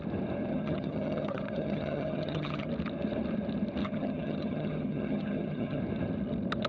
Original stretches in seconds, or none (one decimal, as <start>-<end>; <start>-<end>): 0.0-0.5; 2.7-3.8; 5.8-6.7